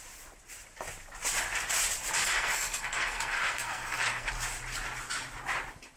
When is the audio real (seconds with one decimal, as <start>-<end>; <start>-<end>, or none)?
0.0-2.2; 4.3-6.0